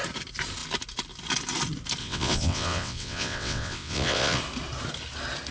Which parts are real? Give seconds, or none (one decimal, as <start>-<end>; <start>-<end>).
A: 0.0-2.0; 4.4-5.5